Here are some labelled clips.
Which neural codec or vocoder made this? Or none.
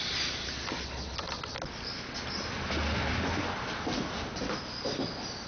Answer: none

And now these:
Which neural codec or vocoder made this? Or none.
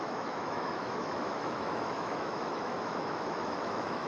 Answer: autoencoder, DAC-VAE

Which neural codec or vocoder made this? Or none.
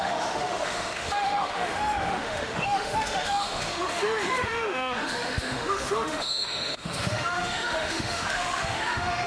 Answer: autoencoder, DAC-VAE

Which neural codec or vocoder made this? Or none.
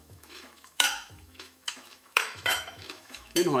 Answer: autoencoder, DAC-VAE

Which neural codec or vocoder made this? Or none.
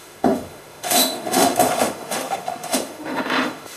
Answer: autoencoder, DAC-VAE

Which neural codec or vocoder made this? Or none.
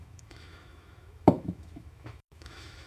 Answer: autoencoder, DAC-VAE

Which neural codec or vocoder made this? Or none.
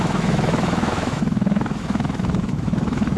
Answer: autoencoder, DAC-VAE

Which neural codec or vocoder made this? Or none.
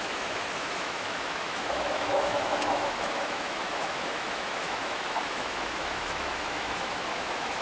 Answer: autoencoder, DAC-VAE